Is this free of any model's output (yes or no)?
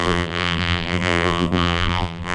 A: no